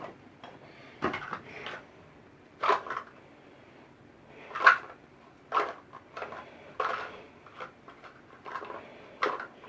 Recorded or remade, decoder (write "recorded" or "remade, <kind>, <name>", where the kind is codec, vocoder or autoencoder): remade, vocoder, BigVGAN v2